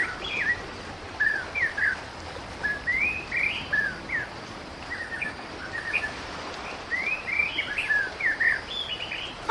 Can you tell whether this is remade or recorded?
recorded